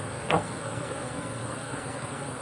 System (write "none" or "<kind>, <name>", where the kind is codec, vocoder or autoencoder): codec, SNAC